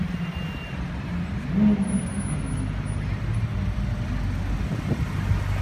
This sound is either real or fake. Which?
real